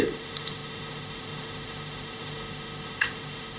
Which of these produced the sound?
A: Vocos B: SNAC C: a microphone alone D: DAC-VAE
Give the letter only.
D